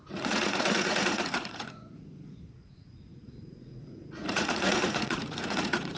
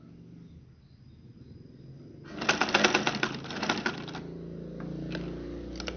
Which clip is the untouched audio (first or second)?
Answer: second